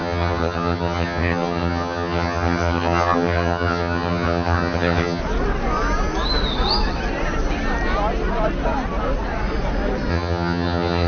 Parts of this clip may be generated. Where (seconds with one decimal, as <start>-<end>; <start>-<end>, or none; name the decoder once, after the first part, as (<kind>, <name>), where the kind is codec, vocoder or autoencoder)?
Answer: 0.0-5.2 (vocoder, HiFi-GAN); 10.1-11.1